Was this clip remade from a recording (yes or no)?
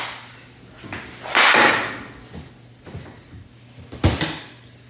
no